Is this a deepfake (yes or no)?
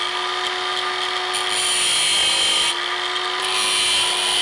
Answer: no